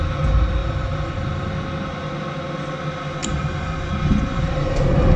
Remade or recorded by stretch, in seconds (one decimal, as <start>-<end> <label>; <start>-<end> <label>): 0.0-0.6 recorded; 0.6-1.5 remade; 1.5-3.2 recorded; 3.2-3.9 remade; 3.9-4.3 recorded; 4.3-5.2 remade